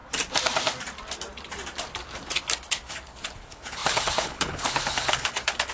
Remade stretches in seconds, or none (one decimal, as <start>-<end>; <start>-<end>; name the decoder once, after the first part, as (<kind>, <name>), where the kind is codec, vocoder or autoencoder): 2.9-5.7 (codec, HILCodec)